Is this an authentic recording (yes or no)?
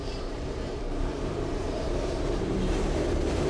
no